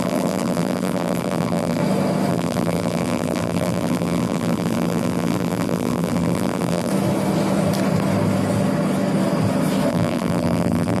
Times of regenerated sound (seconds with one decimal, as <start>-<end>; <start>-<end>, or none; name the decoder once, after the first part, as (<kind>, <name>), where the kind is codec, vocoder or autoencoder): 0.0-1.8 (vocoder, BigVGAN v2); 2.3-6.9; 9.9-11.0